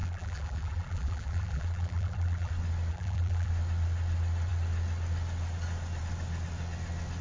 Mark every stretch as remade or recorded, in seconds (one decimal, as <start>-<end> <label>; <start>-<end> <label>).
0.0-2.5 remade; 2.5-2.9 recorded; 2.9-3.5 remade; 3.5-7.2 recorded